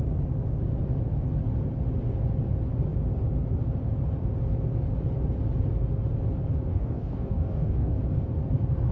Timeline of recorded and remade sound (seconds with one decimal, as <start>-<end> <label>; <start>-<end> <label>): 0.0-6.7 recorded; 6.7-8.0 remade; 8.0-8.9 recorded